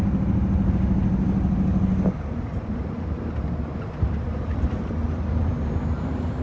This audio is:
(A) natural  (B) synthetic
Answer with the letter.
A